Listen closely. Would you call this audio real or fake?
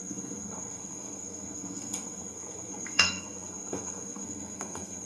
fake